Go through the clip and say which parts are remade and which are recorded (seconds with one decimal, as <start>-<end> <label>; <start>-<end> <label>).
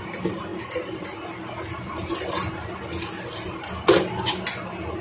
0.0-5.0 recorded